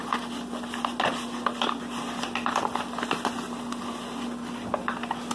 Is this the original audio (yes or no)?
yes